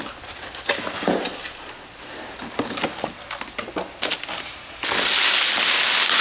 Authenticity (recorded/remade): recorded